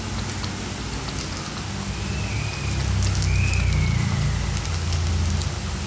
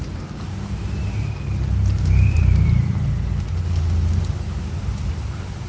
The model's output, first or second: second